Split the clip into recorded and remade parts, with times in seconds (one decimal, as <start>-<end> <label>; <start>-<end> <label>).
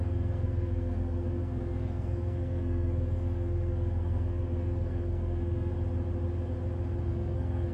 0.0-5.7 remade; 5.7-7.1 recorded; 7.1-7.7 remade